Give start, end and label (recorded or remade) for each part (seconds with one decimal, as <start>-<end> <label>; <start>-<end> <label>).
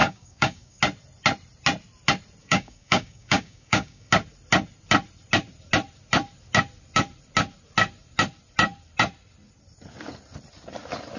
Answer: 0.0-0.8 remade; 0.8-2.4 recorded; 2.4-4.1 remade; 4.1-11.2 recorded